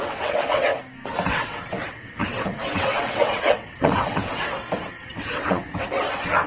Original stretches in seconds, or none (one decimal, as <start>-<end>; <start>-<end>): 0.7-1.3